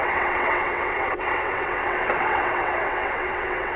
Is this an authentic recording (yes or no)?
no